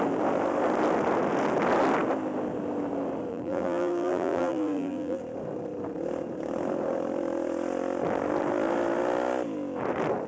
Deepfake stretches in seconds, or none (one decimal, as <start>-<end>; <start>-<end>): 3.3-5.2